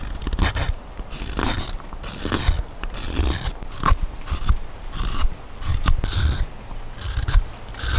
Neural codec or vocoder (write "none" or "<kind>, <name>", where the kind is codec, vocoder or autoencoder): none